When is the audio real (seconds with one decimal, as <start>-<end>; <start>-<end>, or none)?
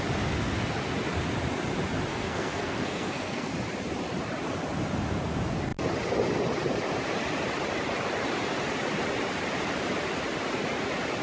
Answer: 0.0-2.1; 3.5-11.2